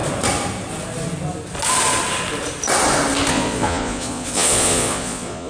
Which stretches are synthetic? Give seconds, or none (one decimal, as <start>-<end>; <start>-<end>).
3.3-5.5